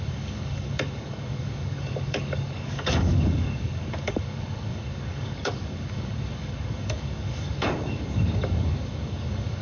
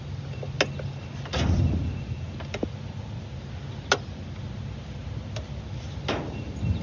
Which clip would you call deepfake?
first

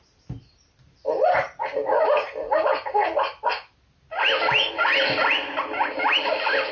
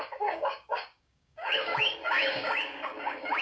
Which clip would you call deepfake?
second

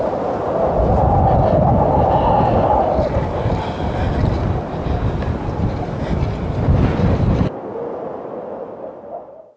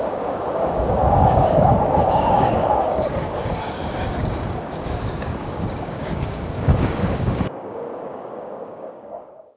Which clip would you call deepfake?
second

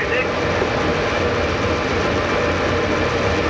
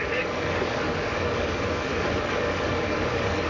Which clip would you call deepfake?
second